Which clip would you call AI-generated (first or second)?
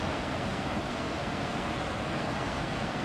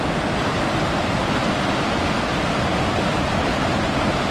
first